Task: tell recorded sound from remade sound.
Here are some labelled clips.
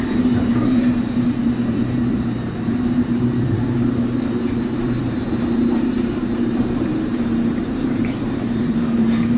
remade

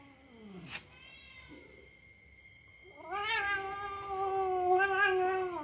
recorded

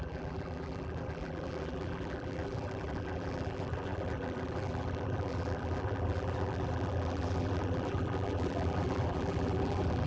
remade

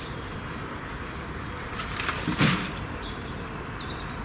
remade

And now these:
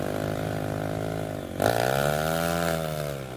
recorded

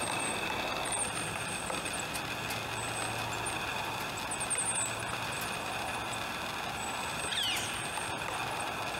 recorded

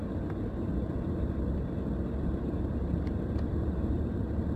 remade